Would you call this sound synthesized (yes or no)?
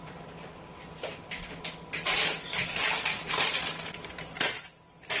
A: no